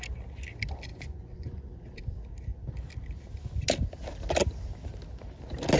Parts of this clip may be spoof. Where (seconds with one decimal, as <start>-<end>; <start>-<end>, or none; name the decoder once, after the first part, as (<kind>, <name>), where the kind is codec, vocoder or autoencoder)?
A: 0.9-1.8 (vocoder, Vocos)